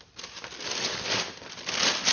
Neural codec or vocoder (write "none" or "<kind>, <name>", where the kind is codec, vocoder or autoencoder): none